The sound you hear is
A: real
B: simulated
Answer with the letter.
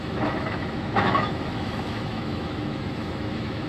B